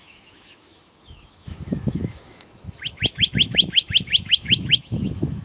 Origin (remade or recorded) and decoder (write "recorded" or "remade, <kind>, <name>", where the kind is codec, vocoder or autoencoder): remade, autoencoder, DAC-VAE